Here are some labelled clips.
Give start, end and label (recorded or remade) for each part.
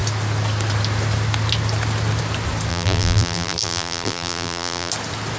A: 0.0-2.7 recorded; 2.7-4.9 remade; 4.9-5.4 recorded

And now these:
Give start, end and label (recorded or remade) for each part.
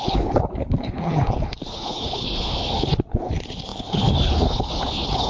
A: 0.0-5.3 remade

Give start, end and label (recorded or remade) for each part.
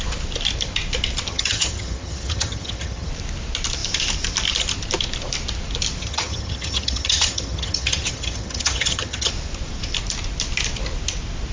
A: 0.0-1.3 recorded; 1.3-3.1 remade; 3.1-6.0 recorded; 6.0-9.3 remade; 9.3-11.5 recorded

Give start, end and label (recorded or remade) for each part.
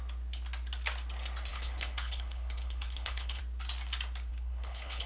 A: 0.0-1.5 recorded; 1.5-3.4 remade; 3.4-4.3 recorded; 4.3-5.1 remade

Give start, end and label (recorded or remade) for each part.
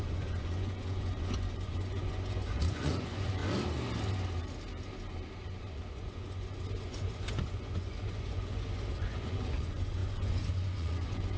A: 0.0-3.4 remade; 3.4-5.6 recorded; 5.6-11.4 remade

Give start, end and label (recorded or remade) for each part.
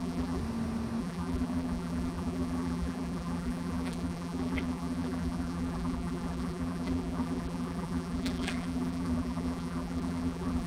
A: 0.0-0.4 remade; 0.4-1.0 recorded; 1.0-10.7 remade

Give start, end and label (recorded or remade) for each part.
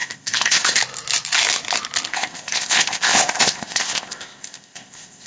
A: 0.0-0.8 remade; 0.8-2.1 recorded; 2.1-5.3 remade